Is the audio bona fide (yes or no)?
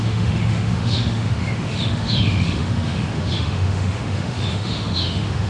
no